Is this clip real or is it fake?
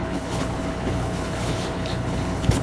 fake